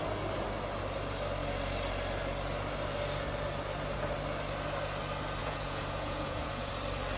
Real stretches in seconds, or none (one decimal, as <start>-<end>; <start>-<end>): 0.0-5.4; 6.7-7.2